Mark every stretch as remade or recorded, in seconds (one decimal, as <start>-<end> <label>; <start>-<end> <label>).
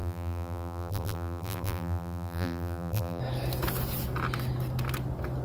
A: 0.0-3.2 remade; 3.2-5.4 recorded